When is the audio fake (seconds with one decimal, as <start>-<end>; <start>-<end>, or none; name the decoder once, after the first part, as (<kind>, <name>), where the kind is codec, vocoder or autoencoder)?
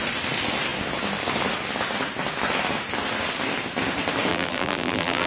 4.3-5.3 (vocoder, BigVGAN v2)